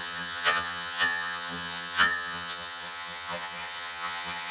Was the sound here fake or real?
fake